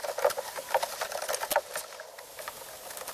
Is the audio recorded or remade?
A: recorded